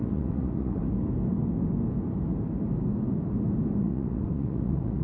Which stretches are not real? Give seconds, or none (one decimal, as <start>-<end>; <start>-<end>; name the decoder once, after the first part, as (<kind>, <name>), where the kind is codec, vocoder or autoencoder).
0.0-0.8 (vocoder, Vocos); 3.8-5.0